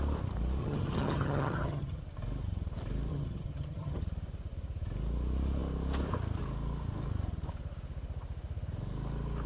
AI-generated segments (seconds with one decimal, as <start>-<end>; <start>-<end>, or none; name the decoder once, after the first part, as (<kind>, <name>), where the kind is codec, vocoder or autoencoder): 0.6-2.0 (vocoder, HiFi-GAN); 3.1-4.0

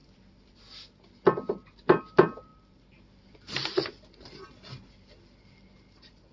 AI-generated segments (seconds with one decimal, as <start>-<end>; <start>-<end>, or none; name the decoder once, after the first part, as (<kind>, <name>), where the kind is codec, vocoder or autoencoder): 2.0-6.3 (vocoder, BigVGAN v2)